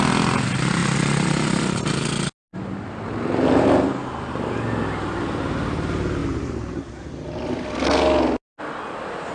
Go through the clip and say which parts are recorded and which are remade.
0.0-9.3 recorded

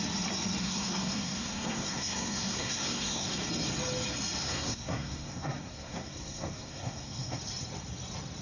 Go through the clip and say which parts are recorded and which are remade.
0.0-0.6 recorded; 0.6-3.4 remade; 3.4-4.4 recorded; 4.4-7.4 remade; 7.4-8.4 recorded

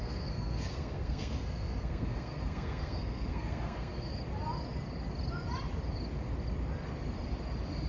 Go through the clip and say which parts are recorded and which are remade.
0.0-4.1 remade; 4.1-7.9 recorded

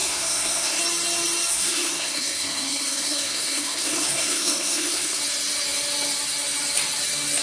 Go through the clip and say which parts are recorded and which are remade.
0.0-0.8 remade; 0.8-1.5 recorded; 1.5-5.2 remade; 5.2-7.4 recorded

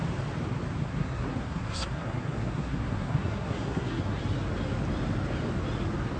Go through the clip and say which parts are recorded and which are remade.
0.0-0.8 recorded; 0.8-4.0 remade; 4.0-6.2 recorded